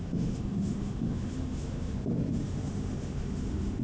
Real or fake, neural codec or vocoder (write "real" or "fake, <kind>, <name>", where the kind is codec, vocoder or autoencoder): fake, autoencoder, DAC-VAE